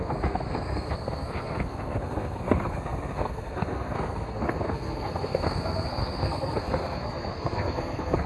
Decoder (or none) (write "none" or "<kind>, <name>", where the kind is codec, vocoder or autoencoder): codec, SNAC